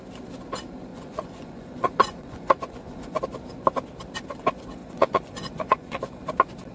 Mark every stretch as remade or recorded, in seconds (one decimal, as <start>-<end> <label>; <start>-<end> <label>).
0.0-0.9 recorded; 0.9-3.2 remade; 3.2-4.8 recorded; 4.8-6.0 remade; 6.0-6.7 recorded